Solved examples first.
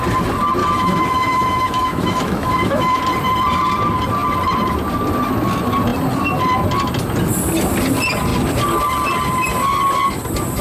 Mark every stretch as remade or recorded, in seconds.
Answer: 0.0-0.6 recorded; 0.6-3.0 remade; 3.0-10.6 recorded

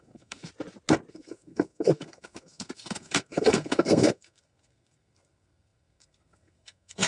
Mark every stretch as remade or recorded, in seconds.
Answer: 0.0-0.5 remade; 0.5-1.1 recorded; 1.1-7.1 remade